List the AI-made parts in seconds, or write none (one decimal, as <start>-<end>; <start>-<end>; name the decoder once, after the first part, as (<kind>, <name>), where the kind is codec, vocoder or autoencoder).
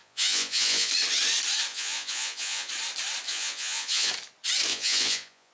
0.0-0.9 (vocoder, Vocos); 1.7-2.7; 3.3-4.1; 4.7-5.5